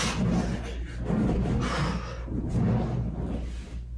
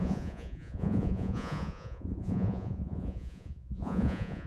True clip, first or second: first